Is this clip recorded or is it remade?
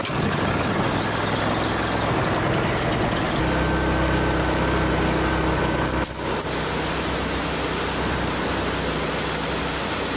recorded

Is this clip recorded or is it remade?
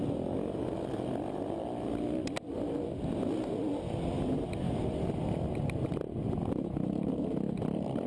recorded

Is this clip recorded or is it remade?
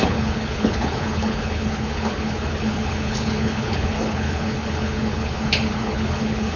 remade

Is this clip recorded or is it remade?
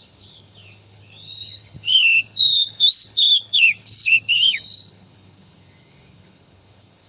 remade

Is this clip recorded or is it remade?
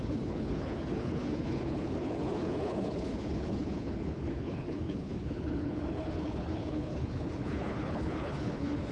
remade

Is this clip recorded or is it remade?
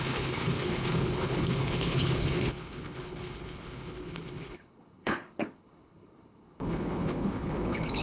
remade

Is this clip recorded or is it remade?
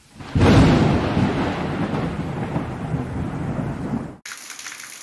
recorded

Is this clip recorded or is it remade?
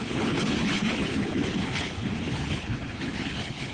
remade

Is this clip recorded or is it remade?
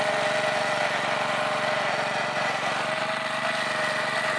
recorded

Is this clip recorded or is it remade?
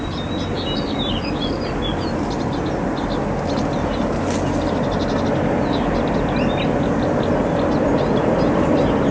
recorded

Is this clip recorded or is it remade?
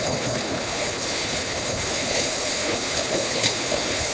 remade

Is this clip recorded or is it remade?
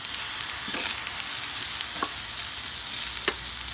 recorded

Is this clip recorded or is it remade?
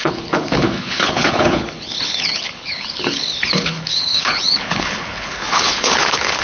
remade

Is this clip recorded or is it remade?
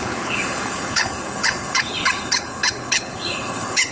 remade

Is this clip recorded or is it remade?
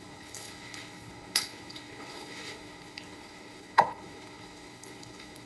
remade